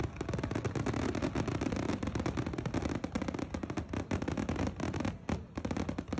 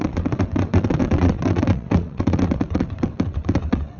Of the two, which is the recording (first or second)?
first